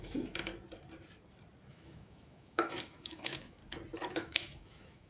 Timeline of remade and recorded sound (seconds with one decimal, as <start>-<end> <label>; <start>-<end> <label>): 0.0-0.5 remade; 0.5-1.7 recorded; 1.7-3.6 remade; 3.6-4.1 recorded; 4.1-5.1 remade